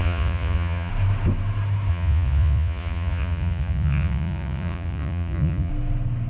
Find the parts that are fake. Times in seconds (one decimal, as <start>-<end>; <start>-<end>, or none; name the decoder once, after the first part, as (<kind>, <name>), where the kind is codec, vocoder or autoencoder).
0.0-0.9 (vocoder, Vocos); 1.9-5.7